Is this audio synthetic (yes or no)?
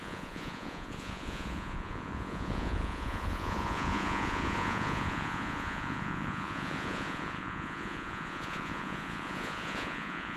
yes